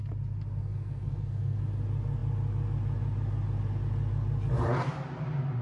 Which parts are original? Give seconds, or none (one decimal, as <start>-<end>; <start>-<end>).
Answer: 0.0-0.6; 1.6-5.6